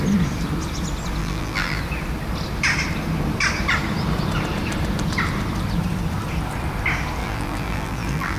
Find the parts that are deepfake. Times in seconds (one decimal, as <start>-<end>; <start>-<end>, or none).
1.2-1.8; 7.2-8.4